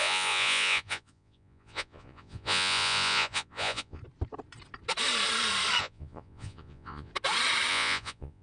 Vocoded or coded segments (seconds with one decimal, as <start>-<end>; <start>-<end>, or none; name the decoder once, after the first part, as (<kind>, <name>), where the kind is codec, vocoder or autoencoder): 0.0-4.0 (vocoder, Vocos); 5.8-7.1; 7.7-8.4